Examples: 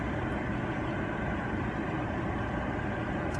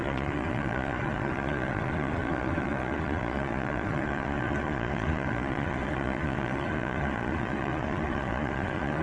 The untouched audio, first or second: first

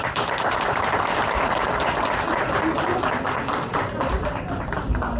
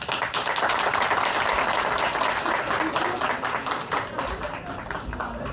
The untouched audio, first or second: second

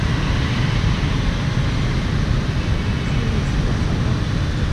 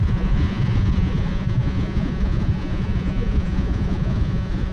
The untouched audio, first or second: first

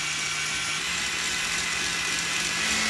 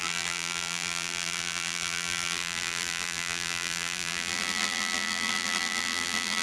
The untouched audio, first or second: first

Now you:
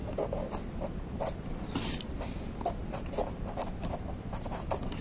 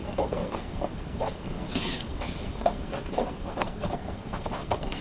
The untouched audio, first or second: first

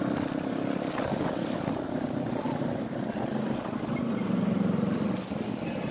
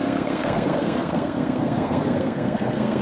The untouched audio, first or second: first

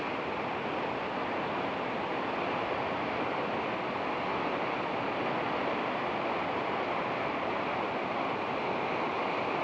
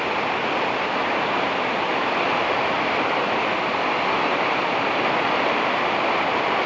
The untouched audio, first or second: first